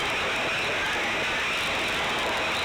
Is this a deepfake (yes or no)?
no